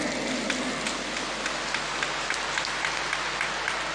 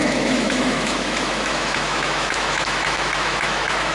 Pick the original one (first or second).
first